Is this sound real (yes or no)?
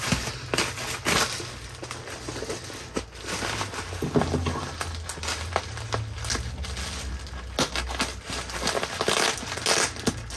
yes